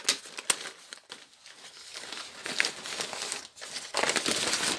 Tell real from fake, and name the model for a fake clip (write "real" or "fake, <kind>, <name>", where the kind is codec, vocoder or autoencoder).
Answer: real